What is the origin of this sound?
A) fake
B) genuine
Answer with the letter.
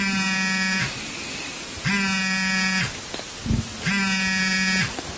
B